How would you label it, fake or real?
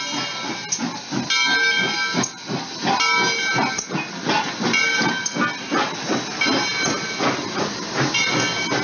real